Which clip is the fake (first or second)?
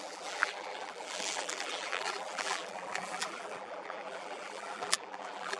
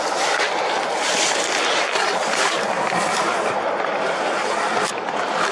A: first